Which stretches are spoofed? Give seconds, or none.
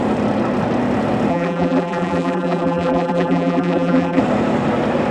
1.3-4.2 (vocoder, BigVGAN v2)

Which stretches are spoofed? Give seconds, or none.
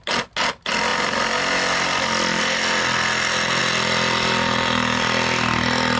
none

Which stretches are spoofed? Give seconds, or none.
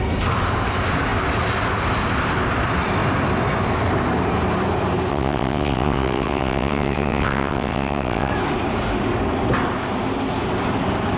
5.1-8.3 (vocoder, WaveNeXt)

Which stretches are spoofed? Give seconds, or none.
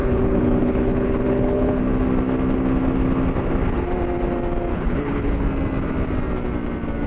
0.0-1.8 (codec, HILCodec); 4.7-5.4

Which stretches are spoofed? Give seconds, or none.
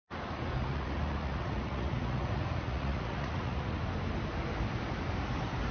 0.6-3.8 (vocoder, Vocos)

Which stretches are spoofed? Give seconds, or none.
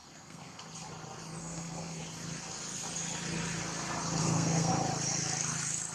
0.0-0.6 (codec, SNAC); 1.4-2.0; 4.2-4.7